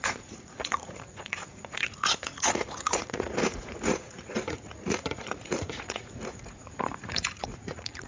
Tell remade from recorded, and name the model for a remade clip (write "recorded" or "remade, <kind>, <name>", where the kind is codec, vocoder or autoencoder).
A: remade, vocoder, Vocos